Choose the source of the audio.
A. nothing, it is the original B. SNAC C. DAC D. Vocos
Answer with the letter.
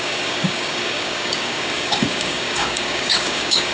C